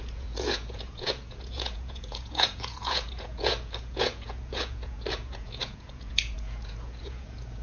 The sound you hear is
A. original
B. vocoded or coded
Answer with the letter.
B